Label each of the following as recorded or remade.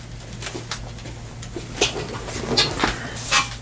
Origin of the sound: recorded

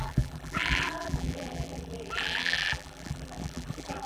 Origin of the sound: remade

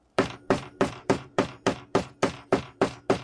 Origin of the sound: remade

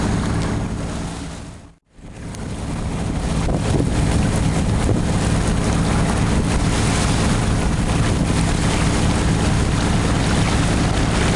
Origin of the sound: recorded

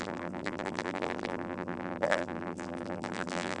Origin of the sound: remade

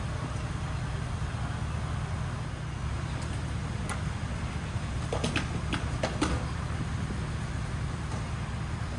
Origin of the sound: recorded